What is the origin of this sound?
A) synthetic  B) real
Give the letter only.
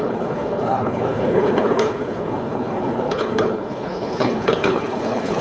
A